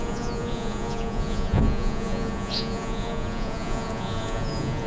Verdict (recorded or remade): remade